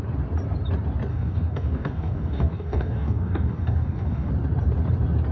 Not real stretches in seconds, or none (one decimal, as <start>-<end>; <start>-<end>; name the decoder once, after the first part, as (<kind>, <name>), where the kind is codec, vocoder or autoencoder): 1.1-4.3 (codec, DAC)